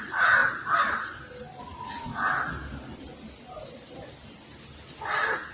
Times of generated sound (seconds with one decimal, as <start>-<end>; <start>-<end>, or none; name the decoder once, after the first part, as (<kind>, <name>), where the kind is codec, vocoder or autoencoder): 0.0-0.4 (vocoder, Vocos); 1.6-2.1